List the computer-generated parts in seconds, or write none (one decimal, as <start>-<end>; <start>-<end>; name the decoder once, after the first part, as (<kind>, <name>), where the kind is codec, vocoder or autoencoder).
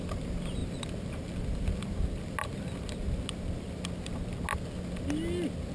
none